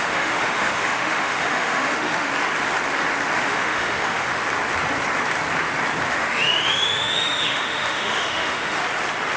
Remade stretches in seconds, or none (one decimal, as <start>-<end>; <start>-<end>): 0.0-2.3; 3.4-4.4; 6.1-8.8